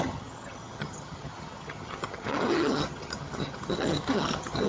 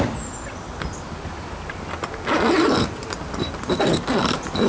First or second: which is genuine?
second